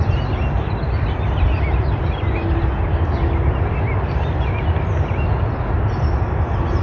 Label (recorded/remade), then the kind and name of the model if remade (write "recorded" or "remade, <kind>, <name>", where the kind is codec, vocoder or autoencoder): recorded